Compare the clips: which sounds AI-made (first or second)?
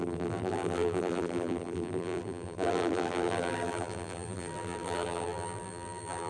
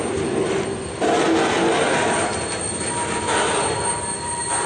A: first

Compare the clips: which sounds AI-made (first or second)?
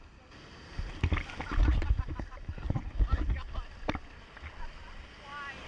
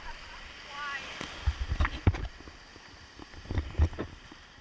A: second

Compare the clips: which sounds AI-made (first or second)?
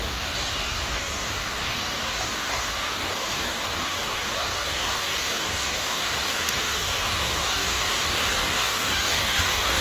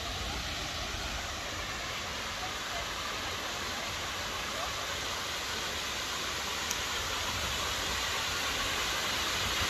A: first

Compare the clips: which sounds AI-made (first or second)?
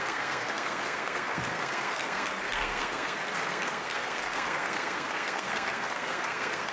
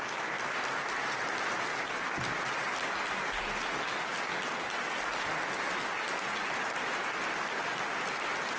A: first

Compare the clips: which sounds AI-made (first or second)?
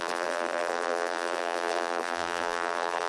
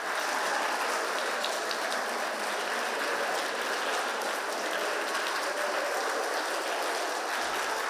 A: first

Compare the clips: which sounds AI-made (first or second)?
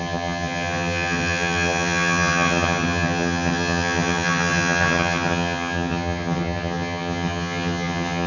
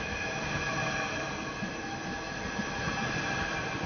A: first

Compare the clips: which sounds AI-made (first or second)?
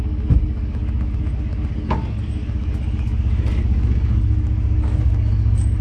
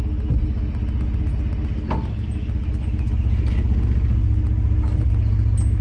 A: first